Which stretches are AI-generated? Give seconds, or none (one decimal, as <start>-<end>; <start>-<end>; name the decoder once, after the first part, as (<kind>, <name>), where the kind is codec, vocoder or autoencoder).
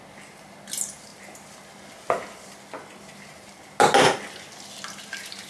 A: none